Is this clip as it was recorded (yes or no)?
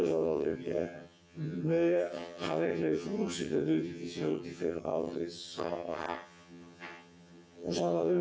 no